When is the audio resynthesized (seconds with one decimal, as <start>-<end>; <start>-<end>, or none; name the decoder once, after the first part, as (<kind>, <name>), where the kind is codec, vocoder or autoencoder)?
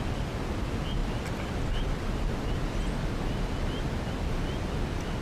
none